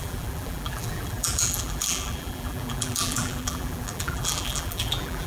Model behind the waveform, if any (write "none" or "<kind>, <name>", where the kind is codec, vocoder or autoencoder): vocoder, BigVGAN v2